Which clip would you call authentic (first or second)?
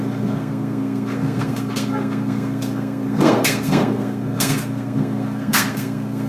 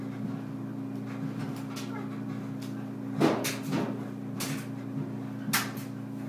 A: second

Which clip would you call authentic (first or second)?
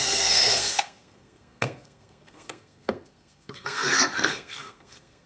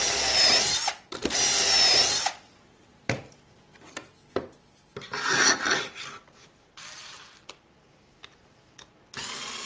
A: second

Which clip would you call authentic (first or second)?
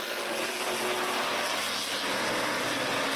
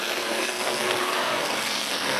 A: first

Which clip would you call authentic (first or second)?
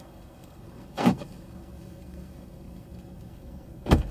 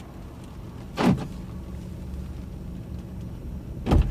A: second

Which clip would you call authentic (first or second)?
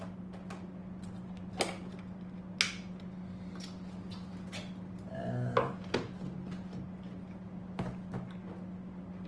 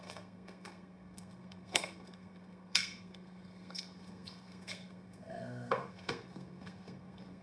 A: first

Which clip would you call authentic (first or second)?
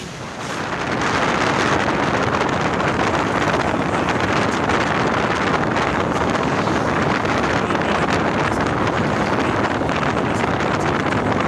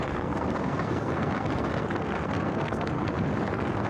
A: first